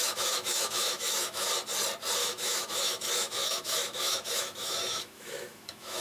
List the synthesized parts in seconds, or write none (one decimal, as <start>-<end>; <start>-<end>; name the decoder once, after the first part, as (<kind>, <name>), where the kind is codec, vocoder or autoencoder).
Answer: 0.0-1.5 (autoencoder, DAC-VAE); 2.2-6.0